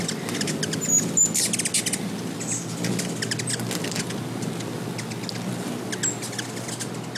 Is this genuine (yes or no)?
yes